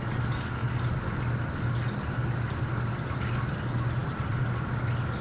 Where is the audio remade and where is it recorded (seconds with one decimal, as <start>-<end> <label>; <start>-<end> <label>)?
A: 0.0-4.0 recorded; 4.0-4.6 remade; 4.6-5.2 recorded